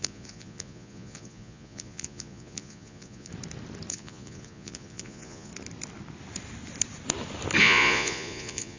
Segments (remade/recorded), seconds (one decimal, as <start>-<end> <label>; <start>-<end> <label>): 0.0-3.3 remade; 3.3-3.9 recorded; 3.9-5.5 remade; 5.5-7.6 recorded; 7.6-8.8 remade